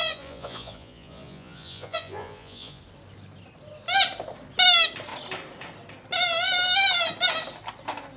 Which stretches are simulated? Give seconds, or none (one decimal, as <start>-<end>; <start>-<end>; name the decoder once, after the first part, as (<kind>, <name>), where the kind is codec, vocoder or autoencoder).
0.0-2.8 (vocoder, Vocos)